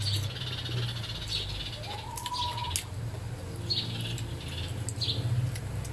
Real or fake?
real